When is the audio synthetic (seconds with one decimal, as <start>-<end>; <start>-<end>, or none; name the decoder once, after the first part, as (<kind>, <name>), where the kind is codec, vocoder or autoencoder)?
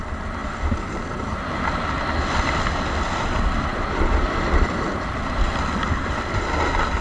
0.4-1.8 (vocoder, BigVGAN v2); 3.7-6.5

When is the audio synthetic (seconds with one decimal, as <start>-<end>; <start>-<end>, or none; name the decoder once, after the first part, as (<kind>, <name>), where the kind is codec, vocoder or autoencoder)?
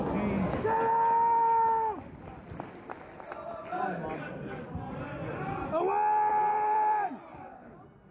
6.3-7.1 (vocoder, BigVGAN v2)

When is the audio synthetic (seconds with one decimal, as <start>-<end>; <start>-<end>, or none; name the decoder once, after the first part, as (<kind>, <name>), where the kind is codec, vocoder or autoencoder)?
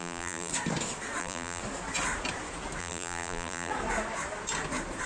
0.0-0.5 (vocoder, BigVGAN v2); 1.2-1.6; 2.8-3.7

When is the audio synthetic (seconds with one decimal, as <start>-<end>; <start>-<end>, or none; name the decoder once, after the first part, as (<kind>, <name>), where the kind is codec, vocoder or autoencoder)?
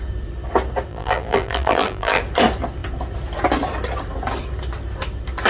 0.9-2.2 (vocoder, BigVGAN v2)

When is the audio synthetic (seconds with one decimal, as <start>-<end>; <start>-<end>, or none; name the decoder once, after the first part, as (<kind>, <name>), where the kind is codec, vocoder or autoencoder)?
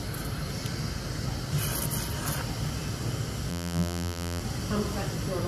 3.5-4.4 (vocoder, BigVGAN v2)